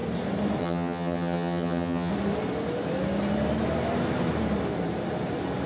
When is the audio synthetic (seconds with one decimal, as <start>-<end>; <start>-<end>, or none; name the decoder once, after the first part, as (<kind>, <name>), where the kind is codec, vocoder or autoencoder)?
0.6-2.1 (vocoder, HiFi-GAN)